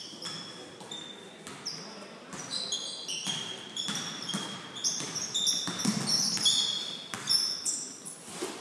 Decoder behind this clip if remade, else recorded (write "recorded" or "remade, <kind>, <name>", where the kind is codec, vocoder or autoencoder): recorded